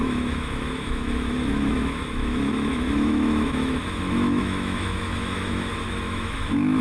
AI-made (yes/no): yes